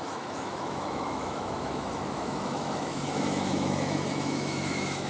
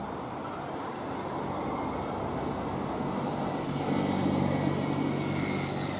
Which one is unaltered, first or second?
second